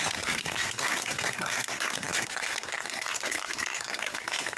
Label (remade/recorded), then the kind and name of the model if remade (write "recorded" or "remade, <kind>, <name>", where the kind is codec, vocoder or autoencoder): remade, codec, SNAC